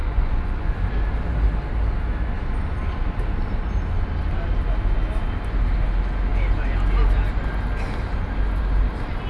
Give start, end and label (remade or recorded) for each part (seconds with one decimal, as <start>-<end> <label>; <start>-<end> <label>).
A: 0.0-0.7 remade; 0.7-9.3 recorded